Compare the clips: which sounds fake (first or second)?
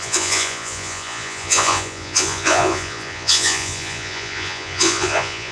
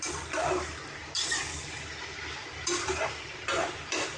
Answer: first